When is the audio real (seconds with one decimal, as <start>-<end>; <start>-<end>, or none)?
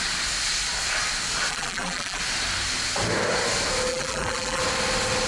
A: 0.0-1.5; 2.2-3.9; 4.6-5.3